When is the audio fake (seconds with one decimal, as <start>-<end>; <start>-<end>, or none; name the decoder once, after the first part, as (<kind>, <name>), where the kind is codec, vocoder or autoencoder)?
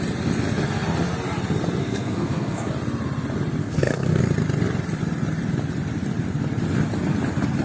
1.8-2.7 (codec, SNAC); 3.6-4.2